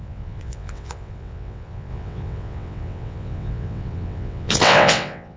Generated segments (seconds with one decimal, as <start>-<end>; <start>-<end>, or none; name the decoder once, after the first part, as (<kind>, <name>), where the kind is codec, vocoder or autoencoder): 0.0-5.4 (vocoder, WaveNeXt)